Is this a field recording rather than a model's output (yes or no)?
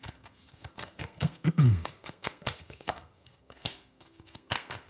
no